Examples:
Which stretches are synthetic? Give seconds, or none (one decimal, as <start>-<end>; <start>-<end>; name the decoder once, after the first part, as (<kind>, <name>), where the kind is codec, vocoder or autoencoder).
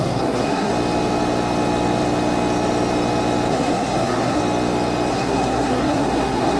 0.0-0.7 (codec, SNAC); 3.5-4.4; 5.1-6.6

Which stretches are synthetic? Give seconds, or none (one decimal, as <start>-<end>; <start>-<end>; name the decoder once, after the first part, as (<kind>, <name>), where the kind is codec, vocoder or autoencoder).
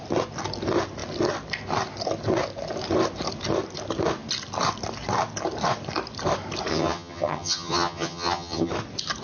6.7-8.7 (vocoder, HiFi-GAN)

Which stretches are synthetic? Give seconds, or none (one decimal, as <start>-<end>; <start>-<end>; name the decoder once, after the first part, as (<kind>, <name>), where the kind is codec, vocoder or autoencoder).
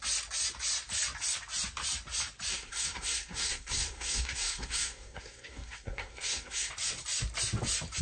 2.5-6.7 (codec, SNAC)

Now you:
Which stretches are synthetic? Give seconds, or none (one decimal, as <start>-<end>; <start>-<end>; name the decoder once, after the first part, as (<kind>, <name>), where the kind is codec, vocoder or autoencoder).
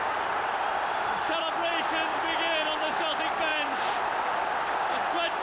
none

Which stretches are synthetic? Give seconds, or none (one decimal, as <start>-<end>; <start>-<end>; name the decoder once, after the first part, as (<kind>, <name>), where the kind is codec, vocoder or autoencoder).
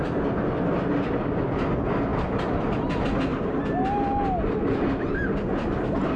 2.1-2.9 (vocoder, BigVGAN v2)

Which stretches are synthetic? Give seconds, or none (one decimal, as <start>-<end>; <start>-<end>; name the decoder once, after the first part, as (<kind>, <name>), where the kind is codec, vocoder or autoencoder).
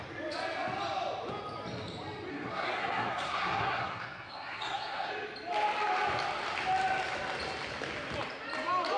2.3-5.1 (codec, SNAC)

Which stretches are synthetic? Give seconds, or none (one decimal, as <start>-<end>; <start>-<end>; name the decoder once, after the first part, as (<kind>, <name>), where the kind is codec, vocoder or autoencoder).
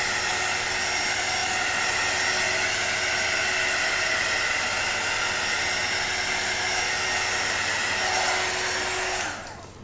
none